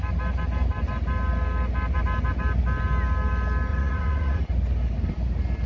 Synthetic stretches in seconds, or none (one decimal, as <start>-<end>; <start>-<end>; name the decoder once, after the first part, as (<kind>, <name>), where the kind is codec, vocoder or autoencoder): 3.7-4.4 (vocoder, Vocos)